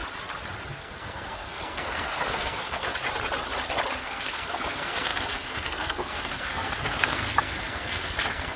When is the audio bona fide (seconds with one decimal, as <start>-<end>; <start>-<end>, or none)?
0.0-0.7; 2.9-4.0